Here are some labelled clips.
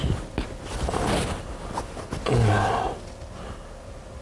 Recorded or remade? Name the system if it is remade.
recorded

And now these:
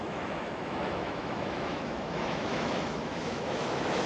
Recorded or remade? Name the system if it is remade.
remade, autoencoder, DAC-VAE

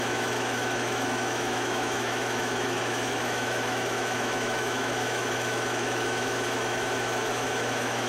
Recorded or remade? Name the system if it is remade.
remade, autoencoder, DAC-VAE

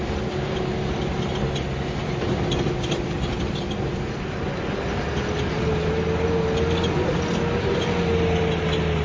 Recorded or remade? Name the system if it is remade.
recorded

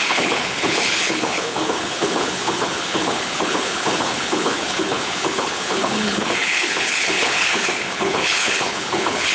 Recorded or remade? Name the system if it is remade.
remade, codec, HILCodec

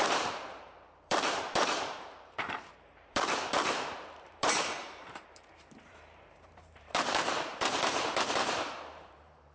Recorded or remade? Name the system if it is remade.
remade, vocoder, BigVGAN v2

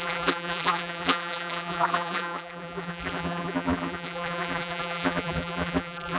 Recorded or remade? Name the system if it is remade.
remade, vocoder, BigVGAN v2